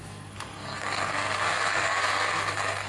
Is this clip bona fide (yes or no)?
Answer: no